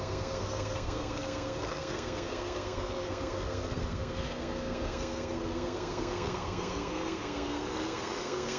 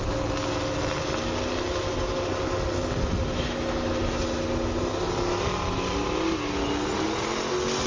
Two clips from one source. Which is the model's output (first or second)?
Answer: first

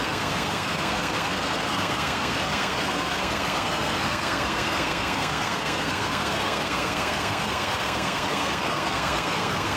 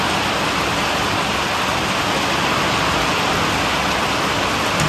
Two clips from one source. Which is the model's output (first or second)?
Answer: first